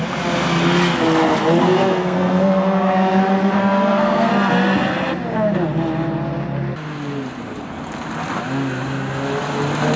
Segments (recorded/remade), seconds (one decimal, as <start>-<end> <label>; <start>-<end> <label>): 0.0-1.6 recorded; 1.6-4.3 remade; 4.3-10.0 recorded